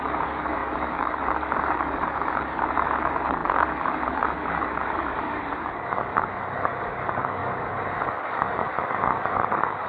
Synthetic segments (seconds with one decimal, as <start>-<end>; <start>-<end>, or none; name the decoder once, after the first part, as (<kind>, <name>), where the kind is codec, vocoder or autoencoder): 0.0-9.9 (codec, DAC)